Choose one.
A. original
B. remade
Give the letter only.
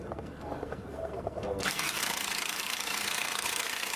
B